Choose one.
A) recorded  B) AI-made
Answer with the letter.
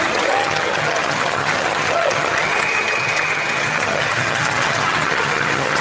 B